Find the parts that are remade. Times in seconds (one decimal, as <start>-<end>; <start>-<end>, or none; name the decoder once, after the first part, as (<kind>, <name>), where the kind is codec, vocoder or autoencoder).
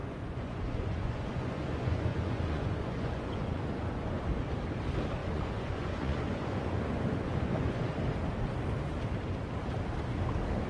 0.0-4.2 (vocoder, Vocos); 5.2-7.9